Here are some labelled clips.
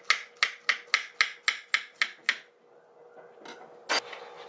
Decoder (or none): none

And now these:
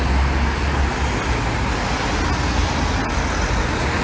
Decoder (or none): none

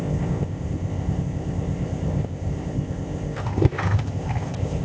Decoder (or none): codec, ZipCodec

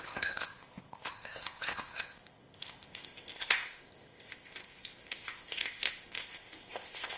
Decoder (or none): codec, ZipCodec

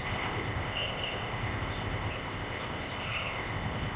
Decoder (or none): codec, ZipCodec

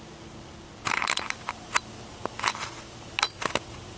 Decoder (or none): none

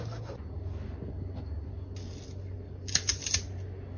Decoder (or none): none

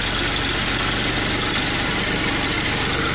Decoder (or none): none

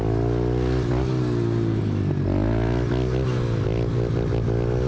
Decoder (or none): none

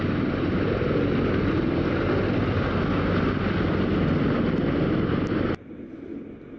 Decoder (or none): none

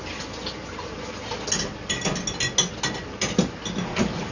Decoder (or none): none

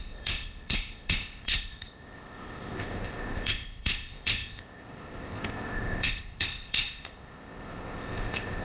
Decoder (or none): codec, ZipCodec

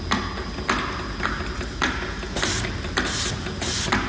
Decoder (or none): none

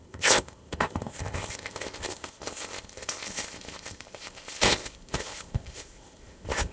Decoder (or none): codec, ZipCodec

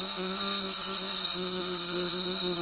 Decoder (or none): codec, ZipCodec